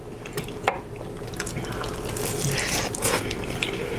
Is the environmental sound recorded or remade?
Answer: recorded